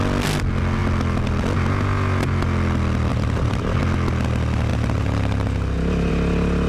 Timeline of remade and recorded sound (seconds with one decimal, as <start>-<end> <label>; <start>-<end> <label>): 0.0-3.1 recorded; 3.1-3.8 remade; 3.8-6.7 recorded